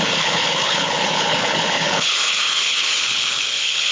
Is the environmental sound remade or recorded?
remade